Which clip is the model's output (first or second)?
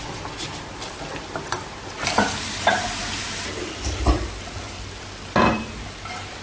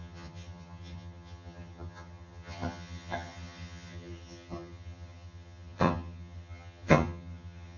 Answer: second